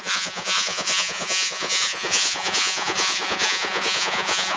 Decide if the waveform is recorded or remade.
remade